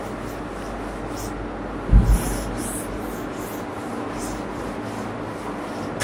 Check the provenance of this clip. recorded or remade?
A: recorded